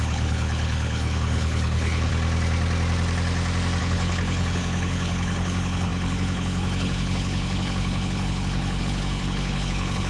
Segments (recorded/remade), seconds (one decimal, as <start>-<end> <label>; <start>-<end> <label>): 0.0-2.1 remade; 2.1-3.8 recorded; 3.8-10.1 remade